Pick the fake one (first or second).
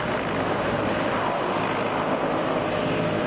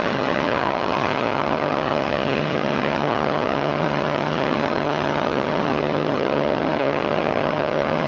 second